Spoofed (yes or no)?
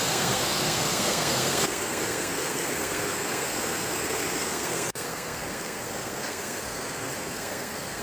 yes